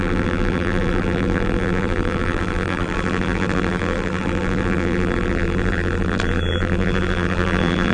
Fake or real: fake